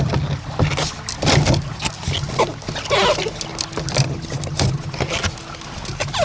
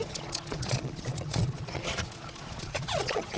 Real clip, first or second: first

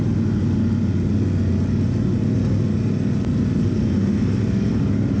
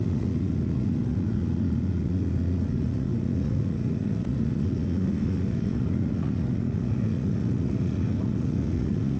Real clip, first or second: first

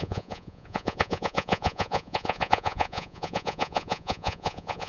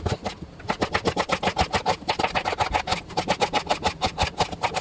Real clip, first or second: second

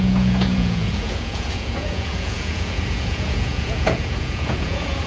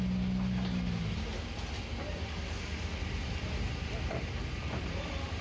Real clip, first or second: second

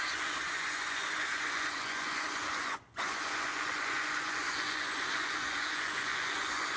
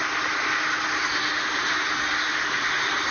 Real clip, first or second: second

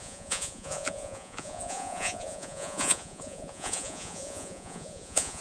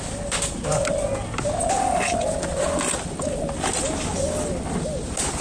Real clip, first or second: second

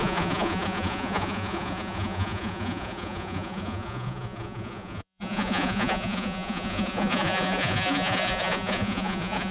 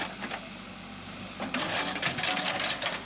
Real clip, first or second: second